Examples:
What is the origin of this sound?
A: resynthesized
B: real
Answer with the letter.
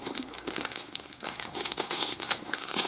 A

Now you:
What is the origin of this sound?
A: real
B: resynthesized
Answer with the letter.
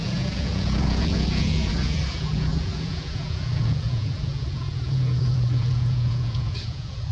B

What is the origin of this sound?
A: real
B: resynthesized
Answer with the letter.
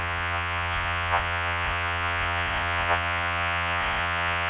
B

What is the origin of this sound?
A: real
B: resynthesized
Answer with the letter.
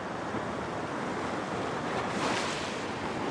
A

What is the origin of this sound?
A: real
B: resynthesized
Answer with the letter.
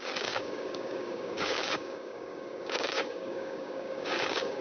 B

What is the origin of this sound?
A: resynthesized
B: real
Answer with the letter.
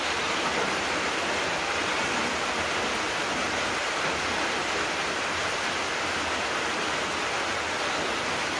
B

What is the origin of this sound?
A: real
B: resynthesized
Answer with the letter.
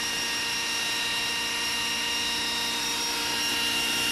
A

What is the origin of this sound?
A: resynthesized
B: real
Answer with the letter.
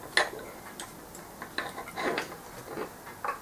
B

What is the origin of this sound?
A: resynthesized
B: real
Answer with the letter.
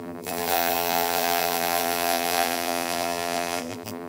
A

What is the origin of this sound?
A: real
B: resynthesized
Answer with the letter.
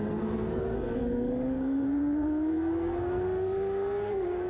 B